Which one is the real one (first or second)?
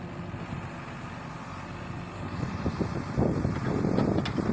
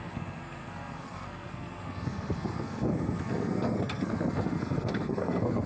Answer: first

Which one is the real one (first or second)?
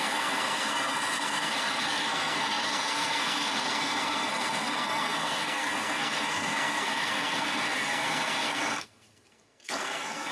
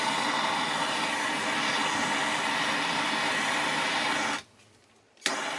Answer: second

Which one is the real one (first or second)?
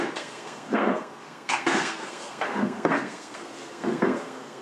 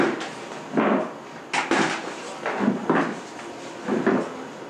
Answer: second